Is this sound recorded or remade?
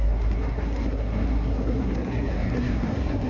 remade